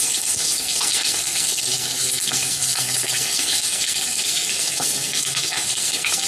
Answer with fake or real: fake